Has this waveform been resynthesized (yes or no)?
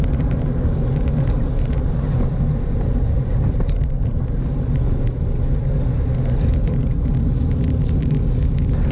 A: no